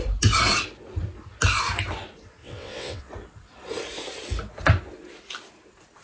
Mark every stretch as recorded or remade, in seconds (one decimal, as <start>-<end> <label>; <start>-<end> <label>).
0.0-2.4 recorded; 2.4-3.1 remade; 3.1-6.0 recorded